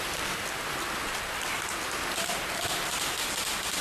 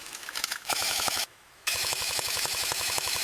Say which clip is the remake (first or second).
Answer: second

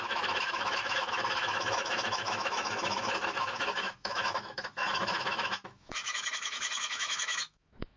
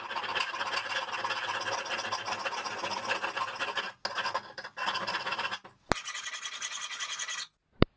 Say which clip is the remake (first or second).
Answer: first